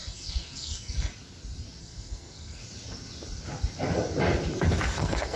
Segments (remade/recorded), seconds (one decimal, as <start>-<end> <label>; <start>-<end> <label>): 0.0-1.1 remade; 1.1-1.8 recorded; 1.8-2.6 remade; 2.6-5.0 recorded; 5.0-5.4 remade